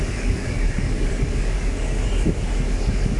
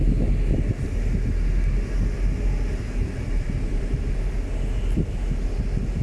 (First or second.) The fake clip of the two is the first